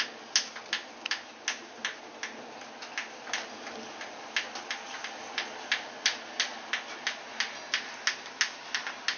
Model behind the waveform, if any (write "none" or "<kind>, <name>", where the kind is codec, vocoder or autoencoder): none